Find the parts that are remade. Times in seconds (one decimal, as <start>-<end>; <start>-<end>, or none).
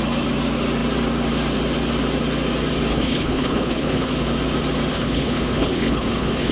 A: 2.9-4.1; 4.9-6.5